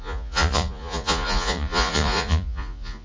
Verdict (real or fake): fake